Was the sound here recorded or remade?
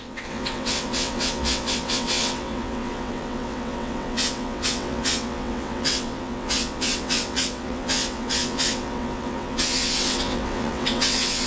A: remade